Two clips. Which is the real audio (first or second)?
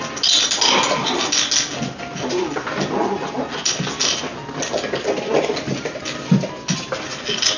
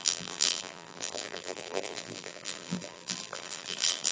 first